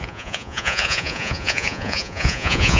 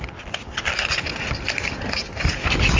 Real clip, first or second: second